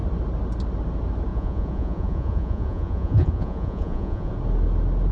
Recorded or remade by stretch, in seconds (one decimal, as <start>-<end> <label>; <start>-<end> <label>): 0.0-1.3 recorded; 1.3-4.3 remade; 4.3-5.1 recorded